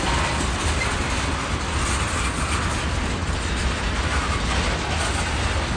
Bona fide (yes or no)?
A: yes